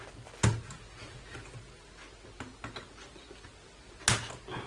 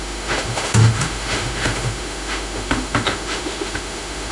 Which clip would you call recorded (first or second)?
first